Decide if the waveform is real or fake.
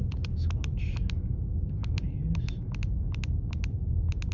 fake